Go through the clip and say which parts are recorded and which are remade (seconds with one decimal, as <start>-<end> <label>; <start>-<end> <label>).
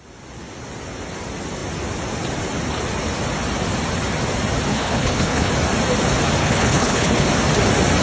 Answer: 0.0-4.7 recorded; 4.7-5.5 remade; 5.5-6.4 recorded; 6.4-7.3 remade; 7.3-8.0 recorded